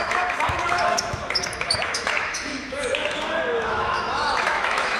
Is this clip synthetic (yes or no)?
yes